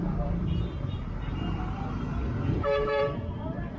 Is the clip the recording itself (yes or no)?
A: no